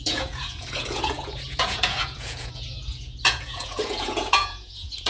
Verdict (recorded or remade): remade